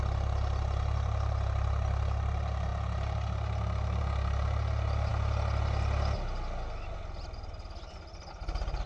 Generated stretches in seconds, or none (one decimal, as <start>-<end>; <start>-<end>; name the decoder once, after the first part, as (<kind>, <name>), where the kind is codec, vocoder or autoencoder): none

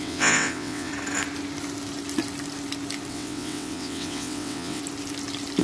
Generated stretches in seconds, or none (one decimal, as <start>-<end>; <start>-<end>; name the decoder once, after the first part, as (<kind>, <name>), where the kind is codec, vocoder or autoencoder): 0.0-0.9 (vocoder, WaveNeXt); 3.1-4.8

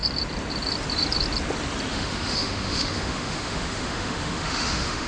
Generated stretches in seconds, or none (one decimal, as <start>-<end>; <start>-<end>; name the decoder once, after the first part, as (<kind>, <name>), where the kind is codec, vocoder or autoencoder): 1.9-5.1 (autoencoder, DAC-VAE)

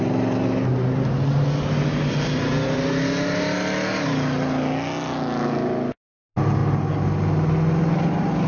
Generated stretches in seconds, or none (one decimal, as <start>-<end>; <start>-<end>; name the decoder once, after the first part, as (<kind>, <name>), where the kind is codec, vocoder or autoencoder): none

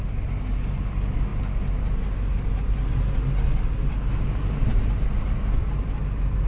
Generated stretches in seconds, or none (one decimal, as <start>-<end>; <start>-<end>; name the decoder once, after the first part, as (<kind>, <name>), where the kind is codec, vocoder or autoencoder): none

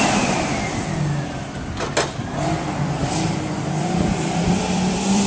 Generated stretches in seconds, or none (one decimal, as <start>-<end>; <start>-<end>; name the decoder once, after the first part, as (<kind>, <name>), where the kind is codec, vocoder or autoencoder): 3.0-5.3 (vocoder, BigVGAN v2)